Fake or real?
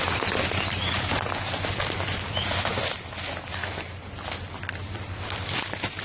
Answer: real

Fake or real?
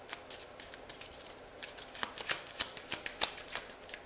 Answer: real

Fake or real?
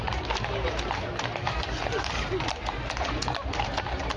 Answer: fake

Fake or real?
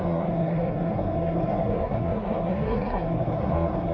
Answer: fake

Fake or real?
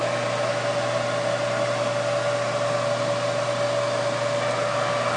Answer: real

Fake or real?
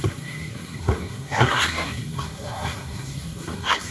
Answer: fake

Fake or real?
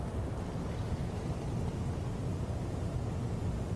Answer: real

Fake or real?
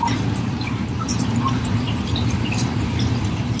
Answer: fake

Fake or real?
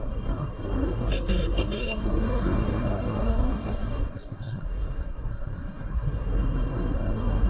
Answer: fake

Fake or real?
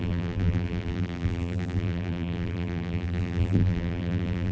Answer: fake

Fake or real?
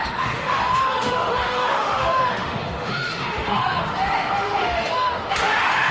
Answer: fake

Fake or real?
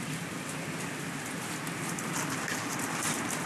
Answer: real